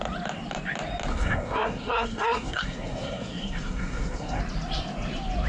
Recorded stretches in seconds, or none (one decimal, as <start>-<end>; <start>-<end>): 0.0-1.1; 4.4-5.5